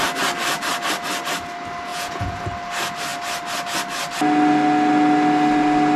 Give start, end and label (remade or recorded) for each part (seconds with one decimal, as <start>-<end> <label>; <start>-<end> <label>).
0.0-1.9 recorded; 1.9-2.4 remade; 2.4-6.0 recorded